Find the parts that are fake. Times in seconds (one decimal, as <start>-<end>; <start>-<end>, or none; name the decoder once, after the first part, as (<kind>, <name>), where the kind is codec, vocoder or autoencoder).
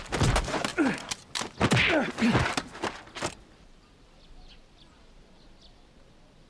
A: none